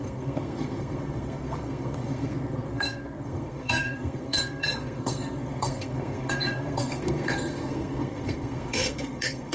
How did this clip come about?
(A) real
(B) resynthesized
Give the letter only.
B